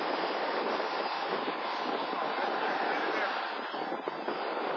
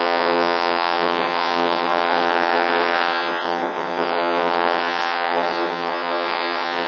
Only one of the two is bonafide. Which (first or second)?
first